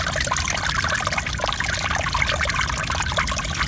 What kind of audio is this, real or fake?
real